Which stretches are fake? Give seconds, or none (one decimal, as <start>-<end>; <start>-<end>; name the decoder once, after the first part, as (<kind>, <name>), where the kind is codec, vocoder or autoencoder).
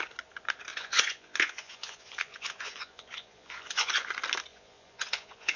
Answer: 0.7-4.1 (vocoder, Vocos); 4.5-5.6